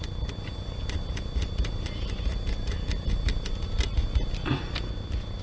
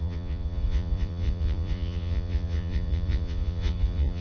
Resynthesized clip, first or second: second